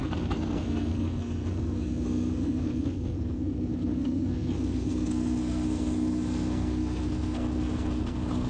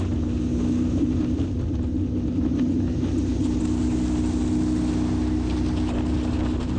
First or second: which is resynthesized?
first